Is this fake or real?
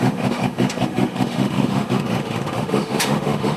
fake